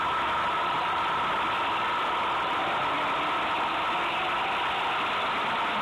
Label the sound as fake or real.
real